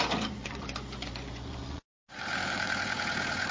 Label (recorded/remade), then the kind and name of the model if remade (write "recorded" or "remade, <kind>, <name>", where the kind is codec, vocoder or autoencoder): remade, vocoder, Vocos